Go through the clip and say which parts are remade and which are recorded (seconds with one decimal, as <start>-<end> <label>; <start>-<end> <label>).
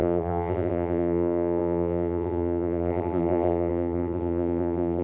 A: 0.0-5.0 remade